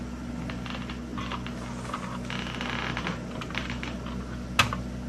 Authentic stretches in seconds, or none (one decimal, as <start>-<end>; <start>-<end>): 0.0-5.1

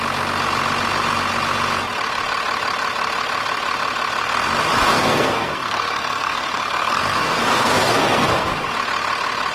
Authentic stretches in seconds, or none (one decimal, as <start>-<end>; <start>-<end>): 0.0-4.9; 8.5-9.5

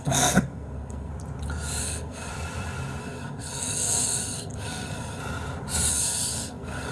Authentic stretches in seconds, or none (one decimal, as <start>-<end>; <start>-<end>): 1.1-1.8; 2.3-3.0; 5.2-5.9

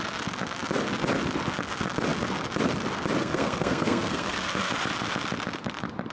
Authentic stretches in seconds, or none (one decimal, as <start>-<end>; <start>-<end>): 0.0-3.2; 4.7-6.1